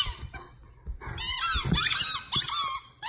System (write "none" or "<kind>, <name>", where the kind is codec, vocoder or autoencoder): none